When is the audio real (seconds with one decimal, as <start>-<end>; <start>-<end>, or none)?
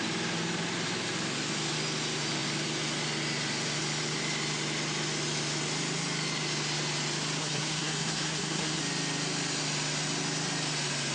0.0-7.4; 8.8-11.1